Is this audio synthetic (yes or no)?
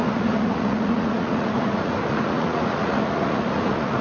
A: yes